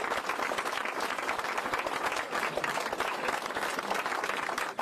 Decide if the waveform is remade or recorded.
recorded